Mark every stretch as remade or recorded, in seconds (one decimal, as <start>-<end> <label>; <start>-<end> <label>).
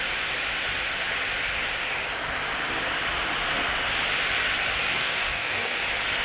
0.0-4.9 recorded; 4.9-5.8 remade; 5.8-6.2 recorded